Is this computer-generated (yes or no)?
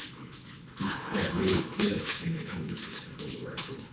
yes